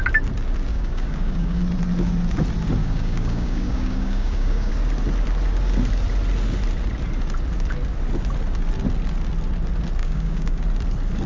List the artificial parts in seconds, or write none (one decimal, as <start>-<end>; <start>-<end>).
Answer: 0.7-1.6; 2.8-4.7; 10.0-10.6